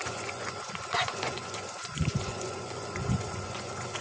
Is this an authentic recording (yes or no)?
no